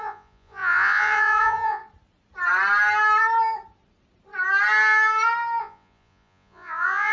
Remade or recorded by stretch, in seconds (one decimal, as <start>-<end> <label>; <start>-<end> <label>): 0.0-1.8 remade; 1.8-5.6 recorded; 5.6-7.1 remade